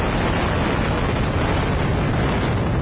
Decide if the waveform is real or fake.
real